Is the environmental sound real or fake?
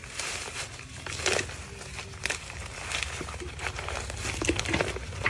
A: real